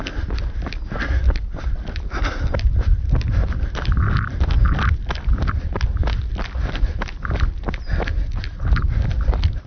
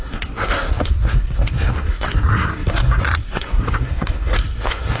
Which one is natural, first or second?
first